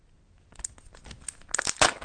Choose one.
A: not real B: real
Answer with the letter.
B